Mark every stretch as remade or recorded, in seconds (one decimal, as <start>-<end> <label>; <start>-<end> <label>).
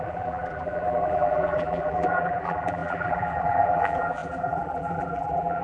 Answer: 0.0-5.6 remade